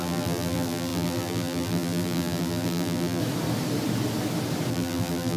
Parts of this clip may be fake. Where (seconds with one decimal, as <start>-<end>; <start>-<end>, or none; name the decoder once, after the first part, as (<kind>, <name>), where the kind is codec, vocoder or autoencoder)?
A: 0.0-3.2 (vocoder, BigVGAN v2); 4.7-5.4